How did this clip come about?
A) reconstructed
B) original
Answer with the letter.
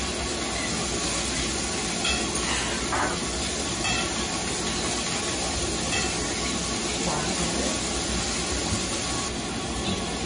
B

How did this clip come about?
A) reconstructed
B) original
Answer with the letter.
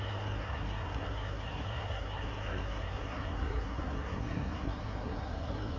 A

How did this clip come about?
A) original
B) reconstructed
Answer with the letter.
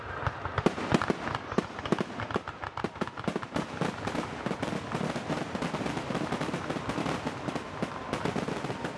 A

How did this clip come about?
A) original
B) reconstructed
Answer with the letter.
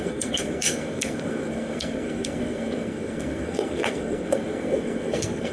B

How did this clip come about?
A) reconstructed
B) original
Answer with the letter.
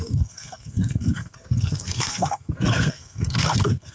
A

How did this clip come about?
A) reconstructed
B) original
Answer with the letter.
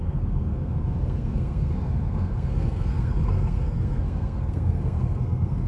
A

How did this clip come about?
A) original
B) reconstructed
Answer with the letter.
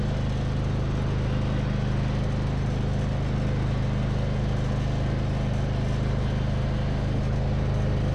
A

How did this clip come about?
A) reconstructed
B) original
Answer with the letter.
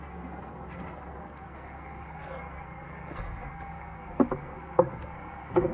A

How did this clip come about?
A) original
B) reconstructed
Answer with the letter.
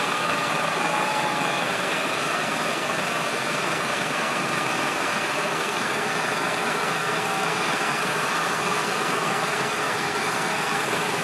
B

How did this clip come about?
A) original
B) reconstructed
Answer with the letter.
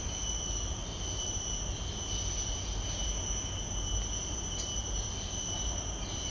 A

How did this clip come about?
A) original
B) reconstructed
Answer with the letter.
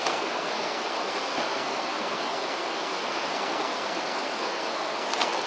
B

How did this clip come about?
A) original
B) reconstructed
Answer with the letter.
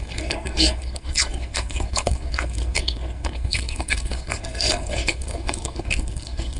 B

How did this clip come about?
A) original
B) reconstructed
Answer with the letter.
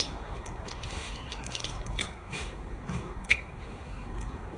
B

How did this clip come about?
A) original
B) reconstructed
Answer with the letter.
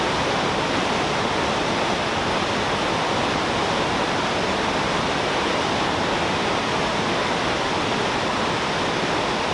A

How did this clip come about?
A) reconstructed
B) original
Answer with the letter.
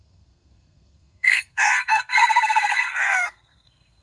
A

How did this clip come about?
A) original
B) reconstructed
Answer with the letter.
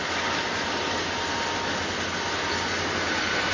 A